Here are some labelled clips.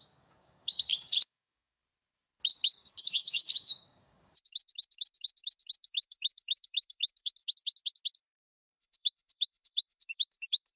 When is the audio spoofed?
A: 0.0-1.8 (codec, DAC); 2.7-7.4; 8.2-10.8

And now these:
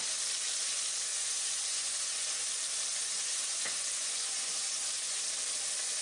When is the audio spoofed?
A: 1.1-2.5 (vocoder, Vocos); 2.9-5.2

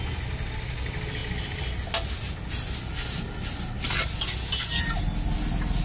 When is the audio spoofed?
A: none

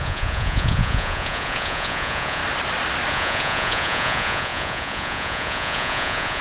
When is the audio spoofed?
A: 0.0-2.4 (vocoder, Vocos); 3.1-6.4